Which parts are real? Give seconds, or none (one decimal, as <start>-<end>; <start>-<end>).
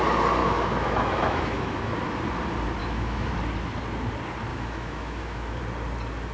0.0-0.4; 1.9-2.8; 3.3-4.5; 5.6-6.3